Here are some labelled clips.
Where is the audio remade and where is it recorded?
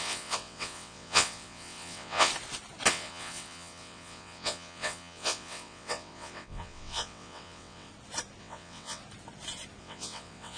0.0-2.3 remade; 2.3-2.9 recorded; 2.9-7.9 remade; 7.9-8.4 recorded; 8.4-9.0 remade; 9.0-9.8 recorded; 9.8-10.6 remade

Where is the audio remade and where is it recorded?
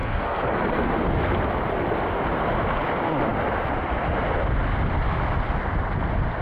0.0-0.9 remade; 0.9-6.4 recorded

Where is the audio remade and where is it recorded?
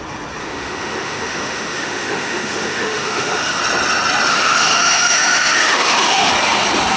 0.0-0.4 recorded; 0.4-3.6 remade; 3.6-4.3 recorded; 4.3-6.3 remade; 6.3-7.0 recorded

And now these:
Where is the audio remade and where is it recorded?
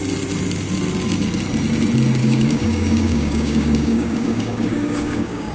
0.0-2.2 recorded; 2.2-5.5 remade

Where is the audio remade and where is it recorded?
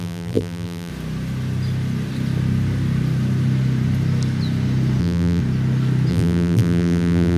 0.0-0.9 remade; 0.9-5.0 recorded; 5.0-5.4 remade; 5.4-6.1 recorded; 6.1-7.4 remade